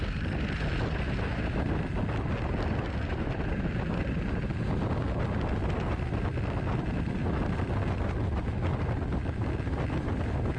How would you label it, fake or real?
real